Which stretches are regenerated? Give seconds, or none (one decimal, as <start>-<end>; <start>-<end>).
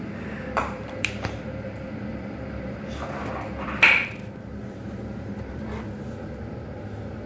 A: 0.6-2.0; 4.6-5.6